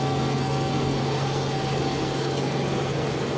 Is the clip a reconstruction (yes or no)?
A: yes